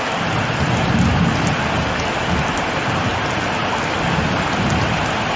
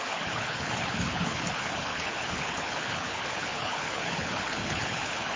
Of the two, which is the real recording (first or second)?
first